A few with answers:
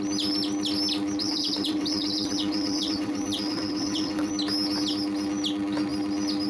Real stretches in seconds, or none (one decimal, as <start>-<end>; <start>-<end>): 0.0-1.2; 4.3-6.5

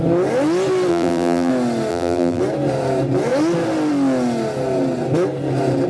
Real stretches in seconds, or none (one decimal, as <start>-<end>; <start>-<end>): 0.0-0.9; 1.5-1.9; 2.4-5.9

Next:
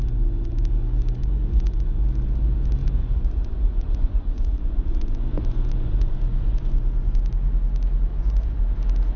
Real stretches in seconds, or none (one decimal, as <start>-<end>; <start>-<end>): 0.0-1.2; 2.0-2.8; 7.2-8.1; 8.6-9.2

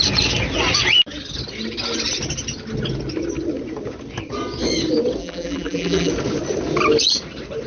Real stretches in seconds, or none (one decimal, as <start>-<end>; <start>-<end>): 0.0-5.2; 6.1-7.7

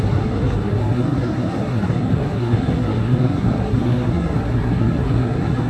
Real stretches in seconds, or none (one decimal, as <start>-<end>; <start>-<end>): none

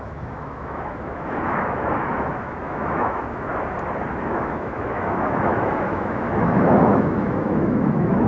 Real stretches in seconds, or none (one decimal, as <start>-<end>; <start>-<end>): 3.5-4.1